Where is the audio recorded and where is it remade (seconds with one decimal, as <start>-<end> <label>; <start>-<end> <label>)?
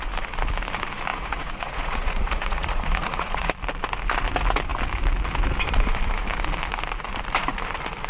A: 0.0-1.1 recorded; 1.1-3.5 remade; 3.5-8.1 recorded